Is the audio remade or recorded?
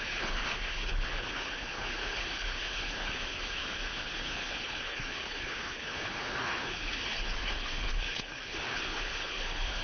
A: remade